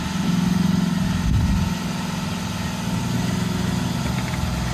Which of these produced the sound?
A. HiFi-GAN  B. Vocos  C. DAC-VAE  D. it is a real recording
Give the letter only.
D